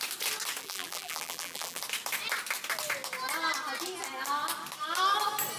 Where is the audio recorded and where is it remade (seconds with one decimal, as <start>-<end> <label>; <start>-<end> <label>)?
0.0-0.6 recorded; 0.6-1.8 remade; 1.8-5.6 recorded